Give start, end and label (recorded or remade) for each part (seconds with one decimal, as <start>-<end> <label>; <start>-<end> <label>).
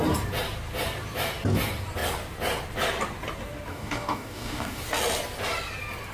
0.0-3.7 recorded; 3.7-4.8 remade; 4.8-6.1 recorded